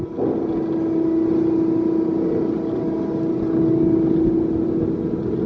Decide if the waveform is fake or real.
real